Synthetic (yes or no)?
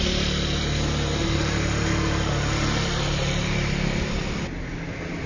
no